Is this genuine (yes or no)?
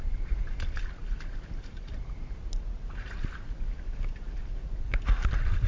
yes